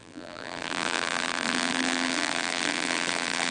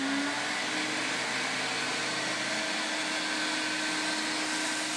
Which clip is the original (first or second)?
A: second